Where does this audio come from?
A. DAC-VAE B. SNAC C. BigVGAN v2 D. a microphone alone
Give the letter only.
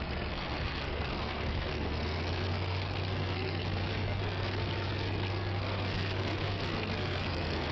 B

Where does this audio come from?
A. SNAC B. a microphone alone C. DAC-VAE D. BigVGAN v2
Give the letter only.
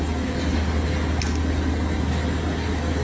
B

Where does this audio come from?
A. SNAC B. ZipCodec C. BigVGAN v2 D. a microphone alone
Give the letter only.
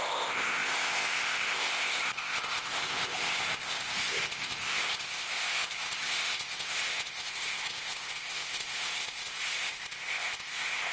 B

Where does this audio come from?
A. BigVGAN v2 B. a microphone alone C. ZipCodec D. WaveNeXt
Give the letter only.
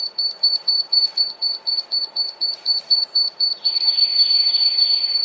A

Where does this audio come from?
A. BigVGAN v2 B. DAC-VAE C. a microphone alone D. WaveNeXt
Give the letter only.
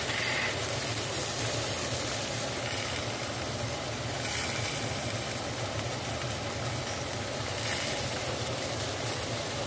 C